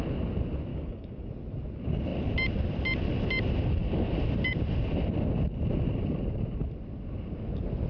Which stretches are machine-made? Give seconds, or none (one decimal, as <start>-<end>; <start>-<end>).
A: 0.7-1.3